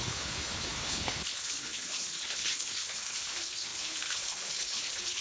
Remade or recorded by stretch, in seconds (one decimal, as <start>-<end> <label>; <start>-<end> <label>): 0.0-5.2 remade